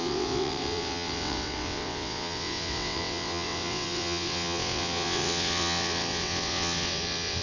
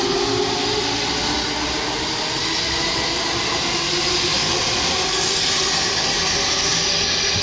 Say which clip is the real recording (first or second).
second